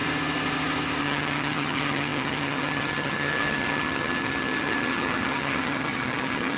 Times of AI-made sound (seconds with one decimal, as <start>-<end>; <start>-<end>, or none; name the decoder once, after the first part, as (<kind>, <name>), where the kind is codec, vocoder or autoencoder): 1.0-6.6 (vocoder, HiFi-GAN)